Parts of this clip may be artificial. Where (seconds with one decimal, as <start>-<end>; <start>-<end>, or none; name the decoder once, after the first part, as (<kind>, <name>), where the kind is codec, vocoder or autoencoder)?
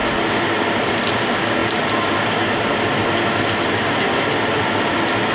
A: none